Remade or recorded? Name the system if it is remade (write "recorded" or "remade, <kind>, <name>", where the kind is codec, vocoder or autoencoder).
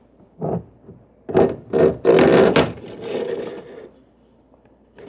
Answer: recorded